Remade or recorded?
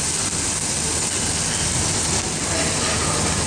recorded